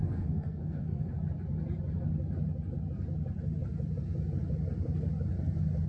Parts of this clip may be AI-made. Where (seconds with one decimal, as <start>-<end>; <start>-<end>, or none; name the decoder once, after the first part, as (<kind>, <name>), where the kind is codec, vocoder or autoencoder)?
0.0-1.1 (codec, SNAC)